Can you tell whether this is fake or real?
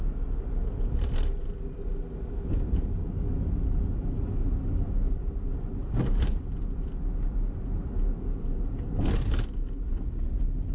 real